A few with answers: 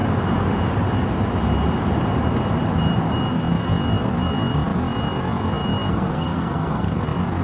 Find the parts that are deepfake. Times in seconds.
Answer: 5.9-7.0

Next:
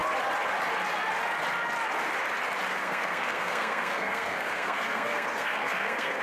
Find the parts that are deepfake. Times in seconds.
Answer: 2.8-6.2

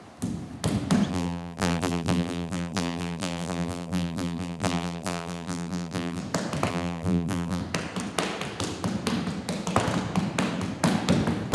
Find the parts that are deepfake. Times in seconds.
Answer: 1.1-6.2; 6.7-7.6

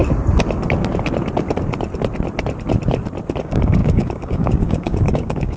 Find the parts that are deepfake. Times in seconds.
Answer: 3.4-5.6